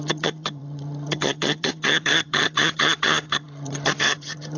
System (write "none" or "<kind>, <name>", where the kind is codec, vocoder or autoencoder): vocoder, HiFi-GAN